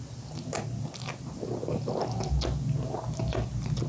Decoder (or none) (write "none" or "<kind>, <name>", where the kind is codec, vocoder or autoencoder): none